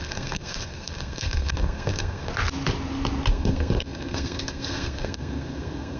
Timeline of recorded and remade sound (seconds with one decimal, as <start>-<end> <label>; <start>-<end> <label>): 0.0-2.3 remade; 2.3-3.3 recorded; 3.3-6.0 remade